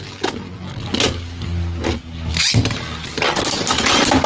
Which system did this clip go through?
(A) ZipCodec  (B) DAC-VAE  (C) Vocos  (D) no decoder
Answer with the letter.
D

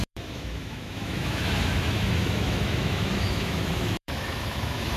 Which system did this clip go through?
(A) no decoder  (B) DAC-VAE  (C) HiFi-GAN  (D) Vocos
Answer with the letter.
B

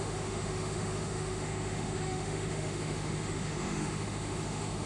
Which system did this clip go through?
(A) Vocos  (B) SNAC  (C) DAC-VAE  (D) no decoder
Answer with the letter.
C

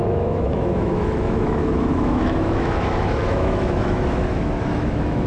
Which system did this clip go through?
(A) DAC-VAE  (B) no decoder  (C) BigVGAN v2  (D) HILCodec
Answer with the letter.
A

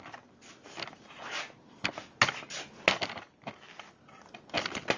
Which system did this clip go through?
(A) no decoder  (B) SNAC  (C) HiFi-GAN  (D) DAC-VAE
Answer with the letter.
A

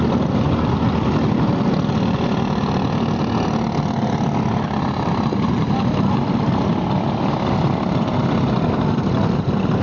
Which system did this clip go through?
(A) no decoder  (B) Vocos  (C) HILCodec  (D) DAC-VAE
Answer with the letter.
A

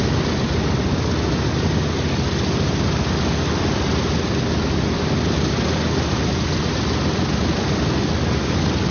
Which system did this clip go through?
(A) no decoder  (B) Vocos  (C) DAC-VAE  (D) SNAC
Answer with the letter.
A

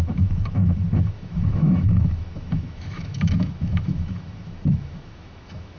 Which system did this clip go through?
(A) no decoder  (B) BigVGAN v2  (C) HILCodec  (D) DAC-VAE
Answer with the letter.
D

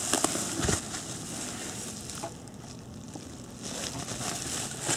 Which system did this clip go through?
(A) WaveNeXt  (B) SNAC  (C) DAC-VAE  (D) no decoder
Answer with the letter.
D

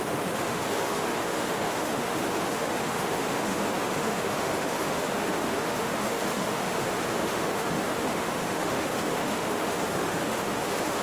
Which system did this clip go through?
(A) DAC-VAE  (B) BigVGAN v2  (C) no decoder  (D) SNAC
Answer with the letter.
A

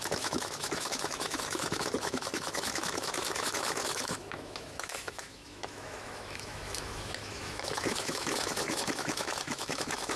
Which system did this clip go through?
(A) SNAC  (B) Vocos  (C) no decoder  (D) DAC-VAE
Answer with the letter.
D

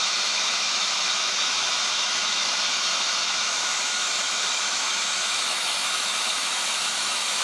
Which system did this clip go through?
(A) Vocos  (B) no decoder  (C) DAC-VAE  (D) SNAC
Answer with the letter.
C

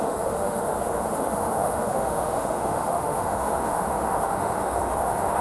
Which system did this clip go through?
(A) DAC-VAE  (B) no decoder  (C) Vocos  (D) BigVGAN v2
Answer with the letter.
A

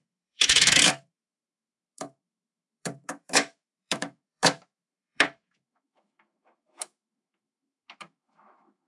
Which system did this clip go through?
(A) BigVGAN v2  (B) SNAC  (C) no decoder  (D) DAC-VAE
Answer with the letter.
D